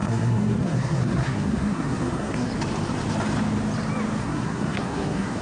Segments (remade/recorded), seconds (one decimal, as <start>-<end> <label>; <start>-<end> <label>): 0.0-2.5 remade; 2.5-4.2 recorded; 4.2-5.4 remade